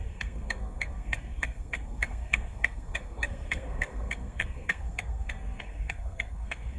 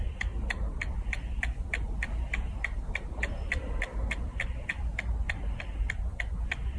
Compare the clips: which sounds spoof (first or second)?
first